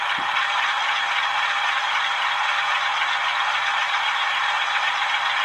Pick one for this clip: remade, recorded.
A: recorded